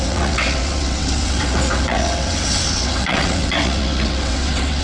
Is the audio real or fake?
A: fake